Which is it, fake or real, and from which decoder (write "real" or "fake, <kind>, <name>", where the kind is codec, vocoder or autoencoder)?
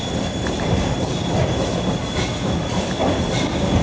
real